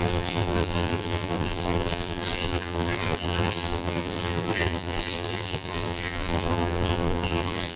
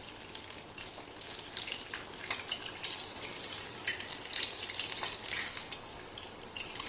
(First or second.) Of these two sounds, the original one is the second